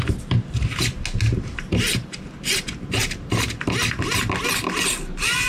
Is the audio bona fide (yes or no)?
yes